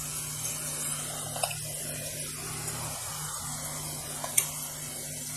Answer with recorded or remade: recorded